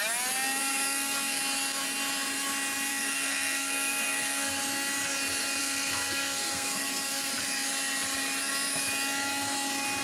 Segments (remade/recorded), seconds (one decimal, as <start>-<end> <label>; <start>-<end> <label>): 0.0-0.6 recorded; 0.6-1.4 remade; 1.4-2.9 recorded; 2.9-4.6 remade; 4.6-5.6 recorded; 5.6-7.3 remade; 7.3-10.0 recorded